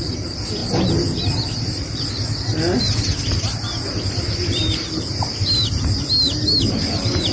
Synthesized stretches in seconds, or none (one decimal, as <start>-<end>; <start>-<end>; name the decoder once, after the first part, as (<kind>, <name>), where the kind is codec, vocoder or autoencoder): none